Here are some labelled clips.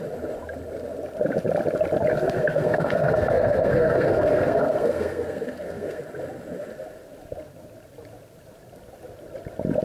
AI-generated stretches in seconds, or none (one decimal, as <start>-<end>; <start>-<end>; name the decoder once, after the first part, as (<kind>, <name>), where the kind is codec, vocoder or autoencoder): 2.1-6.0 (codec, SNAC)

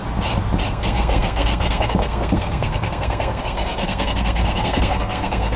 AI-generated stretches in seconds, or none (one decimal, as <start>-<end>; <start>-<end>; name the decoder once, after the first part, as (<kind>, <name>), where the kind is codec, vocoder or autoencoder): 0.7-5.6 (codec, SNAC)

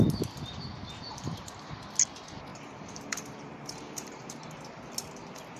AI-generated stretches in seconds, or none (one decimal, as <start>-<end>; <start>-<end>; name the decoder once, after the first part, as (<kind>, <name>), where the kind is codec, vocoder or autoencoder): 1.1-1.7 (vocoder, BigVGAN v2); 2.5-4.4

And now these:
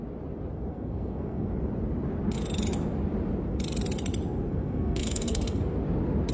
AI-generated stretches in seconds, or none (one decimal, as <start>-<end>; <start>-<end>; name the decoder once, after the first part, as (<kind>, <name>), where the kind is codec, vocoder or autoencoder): 0.7-1.5 (codec, SNAC); 4.5-5.6

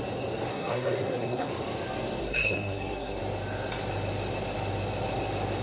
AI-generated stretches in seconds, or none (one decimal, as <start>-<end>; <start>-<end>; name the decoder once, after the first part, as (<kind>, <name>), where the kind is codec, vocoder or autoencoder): 0.5-1.5 (codec, SNAC); 2.2-3.2

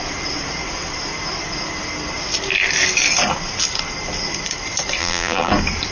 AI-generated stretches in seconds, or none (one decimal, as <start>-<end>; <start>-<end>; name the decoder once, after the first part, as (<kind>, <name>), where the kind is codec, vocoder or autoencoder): 5.0-5.5 (vocoder, BigVGAN v2)

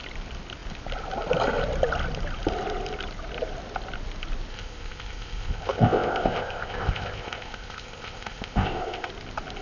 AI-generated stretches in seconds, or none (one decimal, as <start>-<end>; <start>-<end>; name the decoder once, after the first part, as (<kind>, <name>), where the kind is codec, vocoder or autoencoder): 4.5-9.1 (codec, ZipCodec)